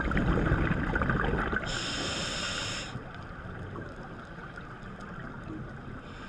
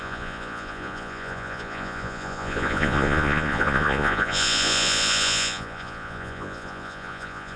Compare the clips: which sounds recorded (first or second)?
first